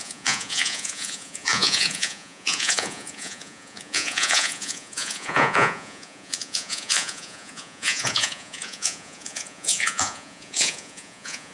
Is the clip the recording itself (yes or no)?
no